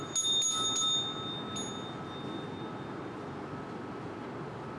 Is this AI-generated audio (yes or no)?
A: no